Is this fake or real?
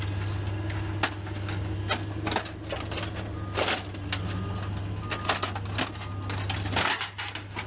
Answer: real